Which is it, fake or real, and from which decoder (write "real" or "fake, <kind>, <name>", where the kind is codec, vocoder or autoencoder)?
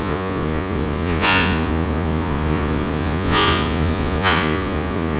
fake, vocoder, Vocos